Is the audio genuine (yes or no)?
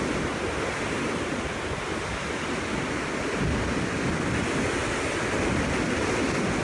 yes